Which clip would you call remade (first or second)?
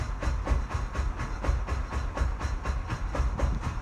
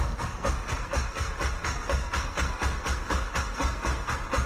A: second